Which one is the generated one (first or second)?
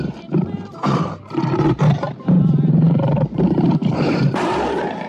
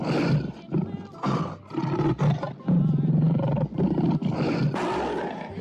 first